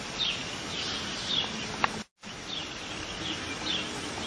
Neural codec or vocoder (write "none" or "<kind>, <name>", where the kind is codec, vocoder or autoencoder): none